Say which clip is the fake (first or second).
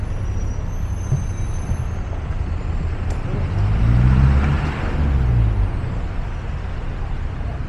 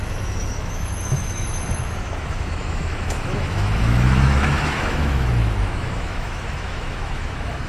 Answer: second